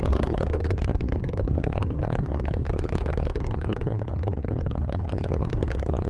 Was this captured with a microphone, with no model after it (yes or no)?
no